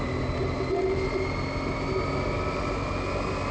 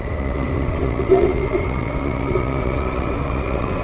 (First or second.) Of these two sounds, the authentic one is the first